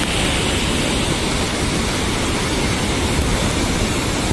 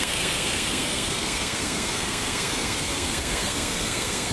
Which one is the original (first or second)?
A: first